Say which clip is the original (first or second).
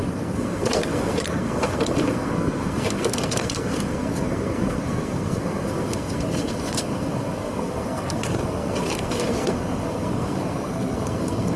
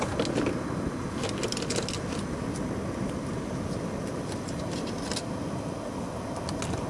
second